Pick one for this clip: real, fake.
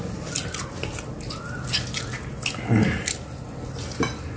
real